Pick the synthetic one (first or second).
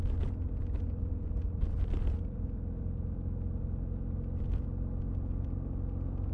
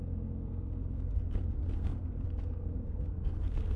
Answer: second